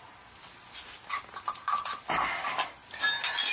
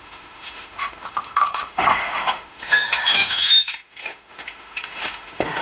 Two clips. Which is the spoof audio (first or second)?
second